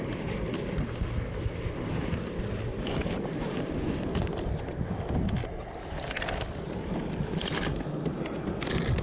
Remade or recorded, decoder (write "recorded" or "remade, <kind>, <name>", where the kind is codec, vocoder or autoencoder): recorded